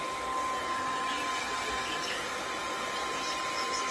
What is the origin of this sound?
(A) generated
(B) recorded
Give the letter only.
B